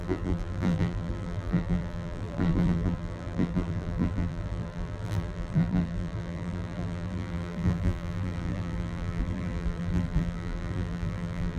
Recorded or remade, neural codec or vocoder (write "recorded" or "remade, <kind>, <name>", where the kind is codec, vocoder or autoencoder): remade, vocoder, BigVGAN v2